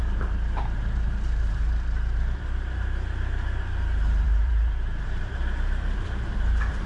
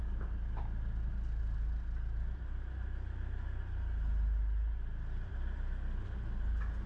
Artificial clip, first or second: first